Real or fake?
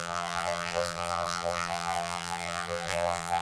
fake